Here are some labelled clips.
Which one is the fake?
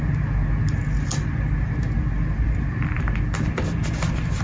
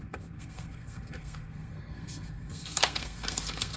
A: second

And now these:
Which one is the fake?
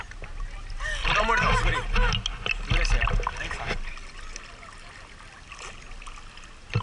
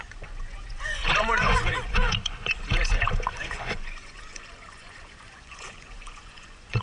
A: second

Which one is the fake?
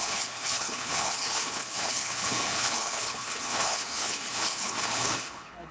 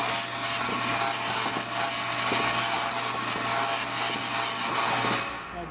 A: first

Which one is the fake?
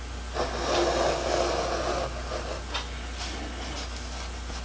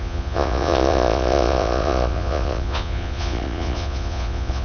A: second